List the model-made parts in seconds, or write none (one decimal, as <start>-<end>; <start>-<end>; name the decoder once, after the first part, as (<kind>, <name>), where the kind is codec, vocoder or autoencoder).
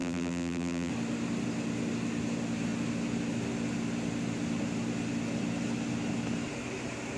0.0-0.9 (vocoder, BigVGAN v2)